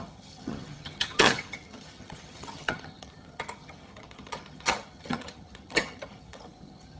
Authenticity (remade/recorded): remade